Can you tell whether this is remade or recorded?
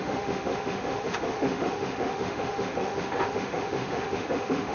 remade